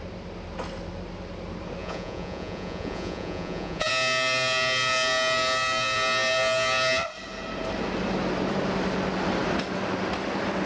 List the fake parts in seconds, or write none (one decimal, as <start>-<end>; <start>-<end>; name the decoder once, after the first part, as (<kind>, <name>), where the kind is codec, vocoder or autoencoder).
1.8-3.9 (vocoder, Vocos)